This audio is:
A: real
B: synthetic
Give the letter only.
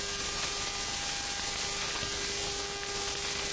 A